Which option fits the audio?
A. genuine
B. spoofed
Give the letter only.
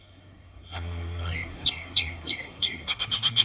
B